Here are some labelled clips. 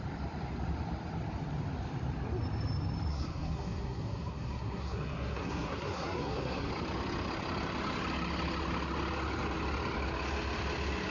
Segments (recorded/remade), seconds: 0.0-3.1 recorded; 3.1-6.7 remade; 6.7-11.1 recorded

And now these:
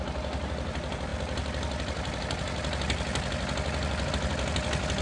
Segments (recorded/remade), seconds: 0.0-5.0 recorded

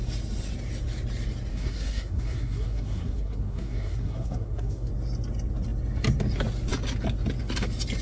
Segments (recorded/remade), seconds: 0.0-1.5 recorded; 1.5-4.9 remade; 4.9-8.0 recorded

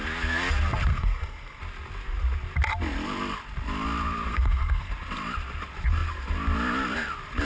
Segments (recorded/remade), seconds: 0.0-0.9 recorded; 0.9-1.6 remade; 1.6-4.3 recorded; 4.3-4.9 remade; 4.9-7.4 recorded